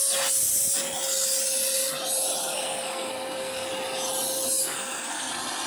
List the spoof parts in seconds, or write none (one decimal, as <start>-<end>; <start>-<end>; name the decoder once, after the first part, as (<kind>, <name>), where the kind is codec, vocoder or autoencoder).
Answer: 2.4-3.7 (codec, SNAC); 4.6-5.3